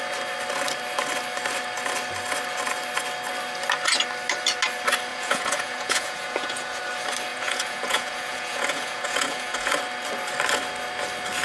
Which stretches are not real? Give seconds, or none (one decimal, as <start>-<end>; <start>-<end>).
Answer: 5.1-6.8; 7.3-9.7